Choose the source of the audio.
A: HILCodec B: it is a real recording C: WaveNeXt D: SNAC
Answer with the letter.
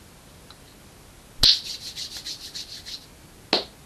B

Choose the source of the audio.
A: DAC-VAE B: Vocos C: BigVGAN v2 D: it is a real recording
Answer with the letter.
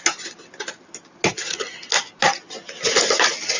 D